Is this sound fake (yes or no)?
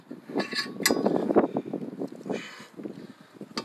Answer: no